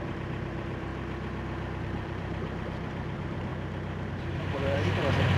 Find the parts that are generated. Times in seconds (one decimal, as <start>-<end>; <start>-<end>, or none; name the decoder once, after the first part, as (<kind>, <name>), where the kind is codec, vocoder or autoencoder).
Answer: 0.0-0.9 (vocoder, BigVGAN v2); 1.8-3.5; 4.1-5.4